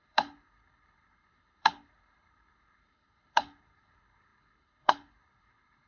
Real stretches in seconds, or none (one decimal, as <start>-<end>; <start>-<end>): none